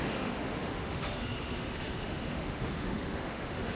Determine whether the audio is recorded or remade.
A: remade